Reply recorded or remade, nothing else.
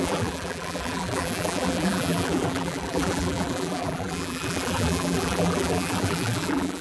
remade